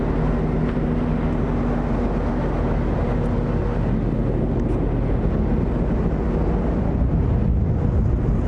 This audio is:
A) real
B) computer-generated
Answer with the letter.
A